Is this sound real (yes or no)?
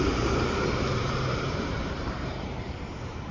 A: no